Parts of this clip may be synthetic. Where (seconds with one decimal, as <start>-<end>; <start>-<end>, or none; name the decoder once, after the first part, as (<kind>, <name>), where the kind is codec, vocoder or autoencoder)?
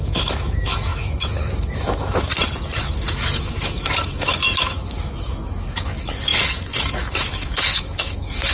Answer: 0.0-2.3 (autoencoder, DAC-VAE); 2.8-8.5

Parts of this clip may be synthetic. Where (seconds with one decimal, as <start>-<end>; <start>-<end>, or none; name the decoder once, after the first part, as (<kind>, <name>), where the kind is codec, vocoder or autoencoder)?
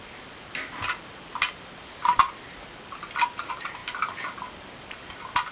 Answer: none